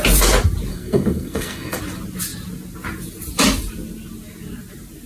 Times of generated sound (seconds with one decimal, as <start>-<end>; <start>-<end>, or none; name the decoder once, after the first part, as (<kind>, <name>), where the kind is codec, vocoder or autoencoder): 0.7-1.8 (codec, SNAC)

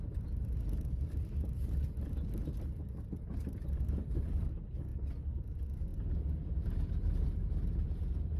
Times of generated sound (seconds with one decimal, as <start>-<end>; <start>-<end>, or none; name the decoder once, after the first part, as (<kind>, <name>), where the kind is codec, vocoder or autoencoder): none

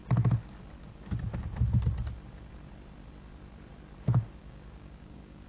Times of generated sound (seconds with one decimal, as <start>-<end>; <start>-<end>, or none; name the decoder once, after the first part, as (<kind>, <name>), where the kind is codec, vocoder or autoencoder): 4.4-5.5 (codec, DAC)

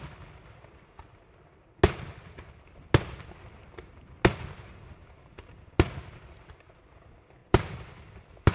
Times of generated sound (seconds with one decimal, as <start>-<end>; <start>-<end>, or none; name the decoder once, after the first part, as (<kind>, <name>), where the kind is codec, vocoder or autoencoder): 7.4-8.1 (vocoder, BigVGAN v2)